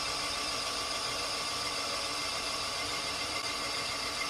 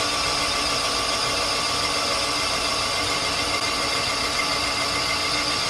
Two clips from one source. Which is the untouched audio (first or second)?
second